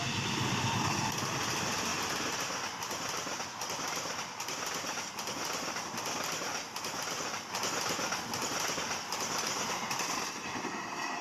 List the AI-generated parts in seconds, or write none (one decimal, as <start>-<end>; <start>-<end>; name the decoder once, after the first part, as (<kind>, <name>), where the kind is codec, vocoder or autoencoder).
0.0-11.2 (vocoder, BigVGAN v2)